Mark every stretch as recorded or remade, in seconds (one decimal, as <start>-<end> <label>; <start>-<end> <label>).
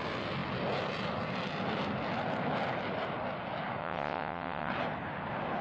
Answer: 0.0-3.8 recorded; 3.8-4.7 remade; 4.7-5.6 recorded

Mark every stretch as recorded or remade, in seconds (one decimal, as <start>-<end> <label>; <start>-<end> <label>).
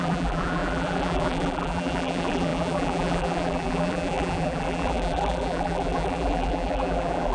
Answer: 0.0-7.3 remade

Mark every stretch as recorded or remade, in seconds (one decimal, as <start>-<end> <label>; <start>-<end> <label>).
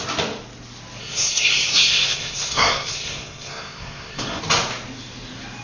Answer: 0.0-1.0 recorded; 1.0-4.4 remade; 4.4-5.6 recorded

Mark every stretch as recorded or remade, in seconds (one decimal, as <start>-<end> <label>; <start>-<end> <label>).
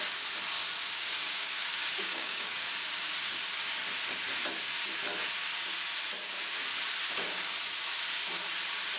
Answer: 0.0-0.8 recorded; 0.8-2.7 remade; 2.7-9.0 recorded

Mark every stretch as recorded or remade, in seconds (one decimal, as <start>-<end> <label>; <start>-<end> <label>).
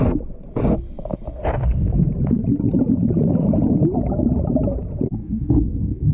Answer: 0.0-5.2 recorded; 5.2-6.1 remade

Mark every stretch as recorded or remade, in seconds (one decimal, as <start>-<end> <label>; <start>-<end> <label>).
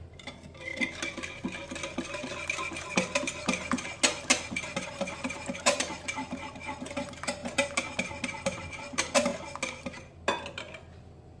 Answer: 0.0-11.4 recorded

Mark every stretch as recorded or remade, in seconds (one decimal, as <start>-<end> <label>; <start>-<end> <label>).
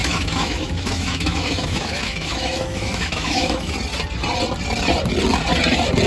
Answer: 0.0-3.7 remade; 3.7-6.1 recorded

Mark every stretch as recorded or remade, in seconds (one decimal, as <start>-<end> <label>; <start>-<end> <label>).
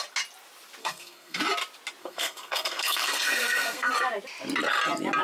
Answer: 0.0-0.8 recorded; 0.8-1.4 remade; 1.4-2.0 recorded; 2.0-3.9 remade; 3.9-5.2 recorded